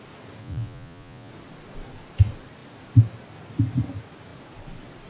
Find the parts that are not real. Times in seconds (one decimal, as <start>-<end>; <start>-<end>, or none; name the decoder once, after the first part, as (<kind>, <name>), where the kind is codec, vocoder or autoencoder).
0.4-1.3 (vocoder, Vocos)